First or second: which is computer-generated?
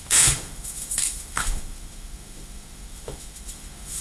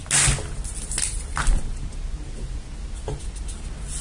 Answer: first